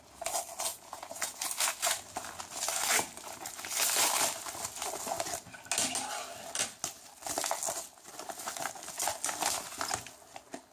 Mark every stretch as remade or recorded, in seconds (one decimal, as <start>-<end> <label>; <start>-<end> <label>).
0.0-0.7 recorded; 0.7-1.4 remade; 1.4-10.7 recorded